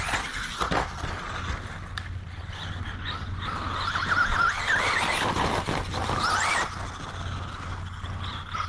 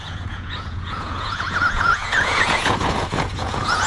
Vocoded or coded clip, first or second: second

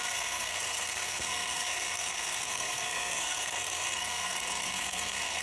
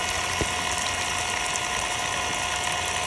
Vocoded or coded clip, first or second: first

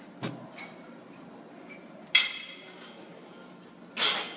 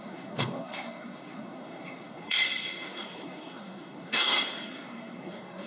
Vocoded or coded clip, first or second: second